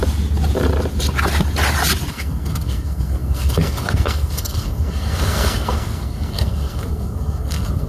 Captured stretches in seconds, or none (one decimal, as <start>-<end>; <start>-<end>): 0.0-2.1